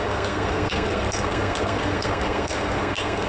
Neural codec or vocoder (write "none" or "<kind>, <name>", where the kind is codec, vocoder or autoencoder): codec, SNAC